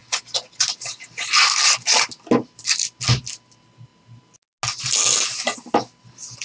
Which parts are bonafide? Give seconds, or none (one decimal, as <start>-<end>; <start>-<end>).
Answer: 0.0-6.4